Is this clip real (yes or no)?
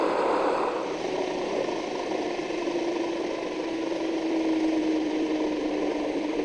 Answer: yes